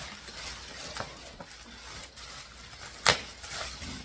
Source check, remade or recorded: recorded